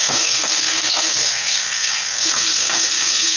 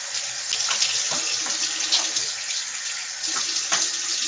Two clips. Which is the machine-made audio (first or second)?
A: first